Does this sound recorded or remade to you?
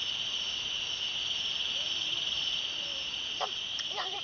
remade